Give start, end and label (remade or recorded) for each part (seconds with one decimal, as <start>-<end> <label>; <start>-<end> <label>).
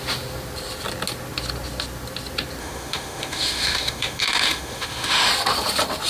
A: 0.0-2.6 recorded; 2.6-5.3 remade; 5.3-6.1 recorded